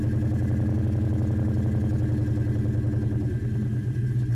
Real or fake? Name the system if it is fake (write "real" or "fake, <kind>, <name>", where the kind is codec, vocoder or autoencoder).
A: real